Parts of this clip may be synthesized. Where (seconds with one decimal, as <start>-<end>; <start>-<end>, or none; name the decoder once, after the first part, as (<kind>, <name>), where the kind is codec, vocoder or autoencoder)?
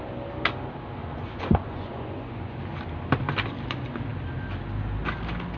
1.0-2.6 (vocoder, Vocos)